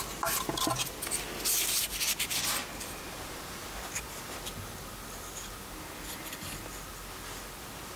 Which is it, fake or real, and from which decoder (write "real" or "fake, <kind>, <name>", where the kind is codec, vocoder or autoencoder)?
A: fake, vocoder, BigVGAN v2